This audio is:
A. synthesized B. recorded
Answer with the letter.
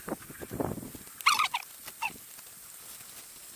B